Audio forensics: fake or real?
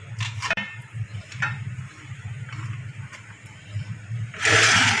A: fake